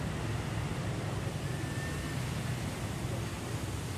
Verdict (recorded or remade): recorded